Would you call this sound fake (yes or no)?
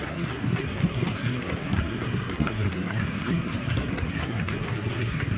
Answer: yes